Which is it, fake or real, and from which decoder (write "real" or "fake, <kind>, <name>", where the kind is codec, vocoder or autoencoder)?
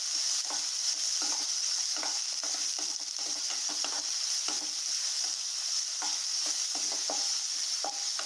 real